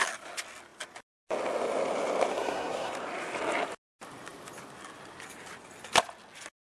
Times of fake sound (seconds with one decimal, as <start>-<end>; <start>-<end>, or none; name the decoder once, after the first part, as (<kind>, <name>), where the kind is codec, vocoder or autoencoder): 2.3-2.9 (codec, SNAC)